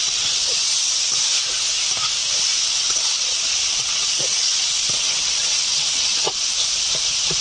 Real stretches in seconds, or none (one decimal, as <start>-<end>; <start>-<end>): 0.7-2.5; 6.4-7.4